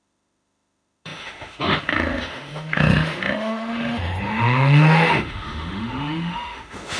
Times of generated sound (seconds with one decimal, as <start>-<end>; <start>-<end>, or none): 0.0-7.0